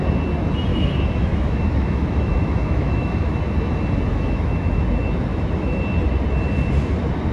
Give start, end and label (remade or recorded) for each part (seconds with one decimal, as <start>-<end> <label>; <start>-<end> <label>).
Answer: 0.0-0.7 recorded; 0.7-3.4 remade; 3.4-4.1 recorded; 4.1-4.8 remade; 4.8-5.3 recorded; 5.3-5.8 remade; 5.8-7.3 recorded